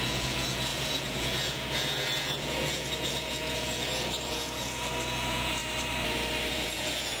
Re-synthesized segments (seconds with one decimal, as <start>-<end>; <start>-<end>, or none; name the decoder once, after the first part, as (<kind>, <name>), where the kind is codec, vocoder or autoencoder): 0.0-5.6 (vocoder, Vocos); 6.5-7.2